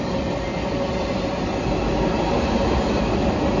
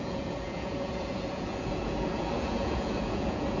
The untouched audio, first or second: first